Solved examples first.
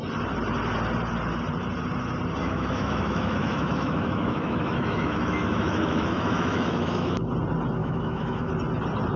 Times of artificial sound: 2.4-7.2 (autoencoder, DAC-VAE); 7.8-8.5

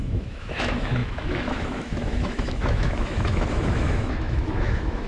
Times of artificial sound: 0.0-5.1 (autoencoder, DAC-VAE)

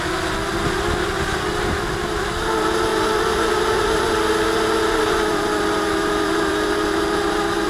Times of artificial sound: 2.9-7.3 (vocoder, BigVGAN v2)

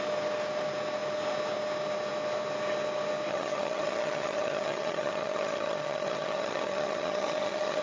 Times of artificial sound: 3.3-7.8 (vocoder, HiFi-GAN)

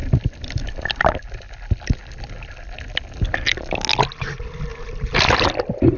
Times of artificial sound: 0.0-0.7 (vocoder, BigVGAN v2); 2.0-2.8

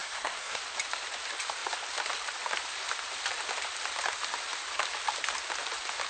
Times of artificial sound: 0.0-0.6 (codec, SNAC)

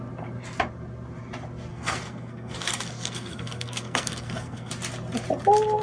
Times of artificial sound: 1.7-4.7 (codec, SNAC)

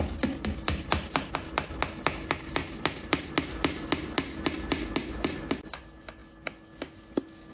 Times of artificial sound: 2.6-3.3 (vocoder, BigVGAN v2); 5.0-5.8